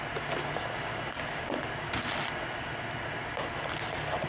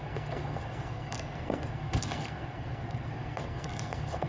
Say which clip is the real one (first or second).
first